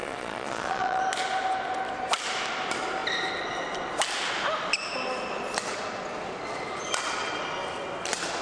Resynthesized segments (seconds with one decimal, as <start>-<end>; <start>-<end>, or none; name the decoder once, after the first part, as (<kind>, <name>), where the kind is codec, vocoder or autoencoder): 0.0-1.0 (vocoder, Vocos)